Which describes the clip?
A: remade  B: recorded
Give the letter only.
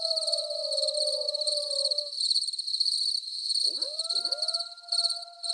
B